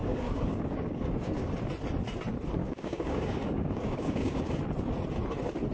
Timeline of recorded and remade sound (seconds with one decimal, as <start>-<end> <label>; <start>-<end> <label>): 0.0-1.5 remade; 1.5-2.6 recorded; 2.6-4.5 remade; 4.5-5.7 recorded